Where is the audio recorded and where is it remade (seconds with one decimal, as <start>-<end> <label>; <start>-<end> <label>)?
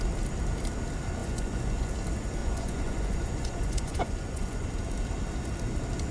0.0-1.2 recorded; 1.2-1.9 remade; 1.9-2.4 recorded; 2.4-4.7 remade; 4.7-6.1 recorded